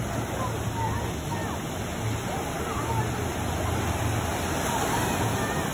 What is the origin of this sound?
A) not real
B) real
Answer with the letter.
B